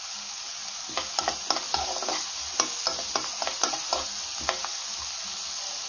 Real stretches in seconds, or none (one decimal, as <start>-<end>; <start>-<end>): 0.0-5.9